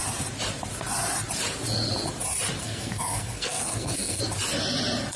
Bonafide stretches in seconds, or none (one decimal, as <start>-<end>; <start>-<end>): 0.0-2.6; 4.2-5.2

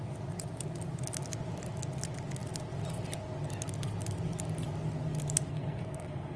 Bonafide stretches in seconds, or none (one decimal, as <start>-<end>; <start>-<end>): 0.0-5.5